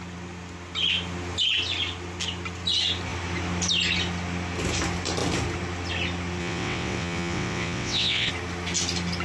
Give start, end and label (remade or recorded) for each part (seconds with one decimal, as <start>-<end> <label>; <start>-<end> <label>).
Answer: 0.0-6.4 recorded; 6.4-8.3 remade; 8.3-9.2 recorded